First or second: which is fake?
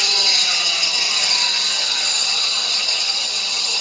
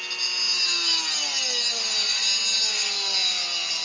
first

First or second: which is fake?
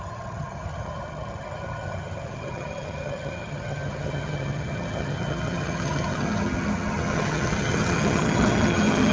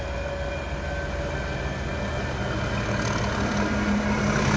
first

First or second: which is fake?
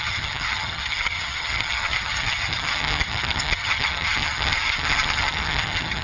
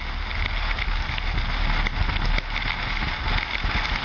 first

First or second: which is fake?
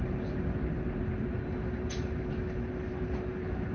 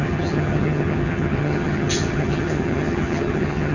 second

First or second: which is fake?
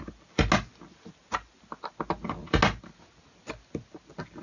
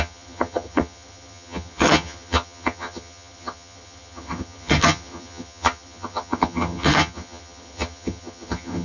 second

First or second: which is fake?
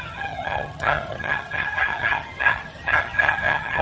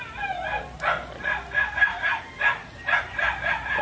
first